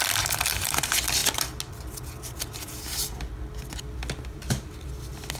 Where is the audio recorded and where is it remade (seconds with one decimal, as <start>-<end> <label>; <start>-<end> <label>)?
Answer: 0.0-5.4 recorded